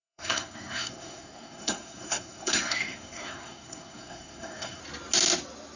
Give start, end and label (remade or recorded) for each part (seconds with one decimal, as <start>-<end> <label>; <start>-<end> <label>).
0.0-4.8 remade; 4.8-5.8 recorded